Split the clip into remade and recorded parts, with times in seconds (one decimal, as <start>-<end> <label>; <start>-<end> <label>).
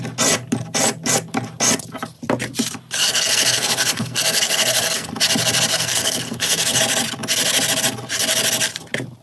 0.0-3.0 recorded; 3.0-5.1 remade; 5.1-5.7 recorded; 5.7-6.8 remade; 6.8-9.2 recorded